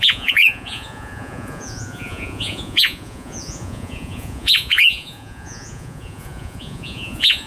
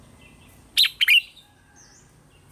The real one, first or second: second